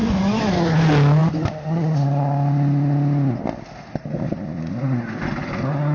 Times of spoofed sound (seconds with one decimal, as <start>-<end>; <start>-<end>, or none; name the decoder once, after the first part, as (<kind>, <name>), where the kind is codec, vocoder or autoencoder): none